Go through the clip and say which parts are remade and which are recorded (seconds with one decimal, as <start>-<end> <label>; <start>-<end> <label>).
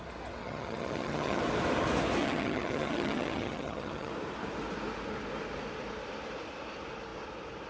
0.0-0.4 recorded; 0.4-1.4 remade; 1.4-2.2 recorded; 2.2-4.1 remade; 4.1-7.7 recorded